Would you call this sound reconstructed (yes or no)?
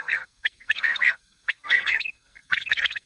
yes